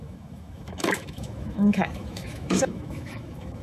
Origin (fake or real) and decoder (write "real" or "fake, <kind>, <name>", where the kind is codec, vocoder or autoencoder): fake, autoencoder, DAC-VAE